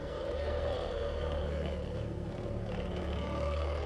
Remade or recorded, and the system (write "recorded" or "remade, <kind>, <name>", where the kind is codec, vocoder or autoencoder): remade, codec, SNAC